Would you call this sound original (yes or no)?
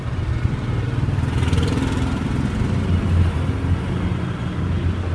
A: yes